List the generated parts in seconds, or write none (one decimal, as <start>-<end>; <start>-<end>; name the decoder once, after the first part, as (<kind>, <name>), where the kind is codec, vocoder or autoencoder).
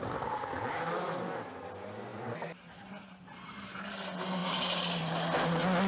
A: 2.1-3.5 (vocoder, BigVGAN v2)